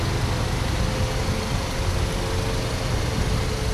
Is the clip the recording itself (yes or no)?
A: yes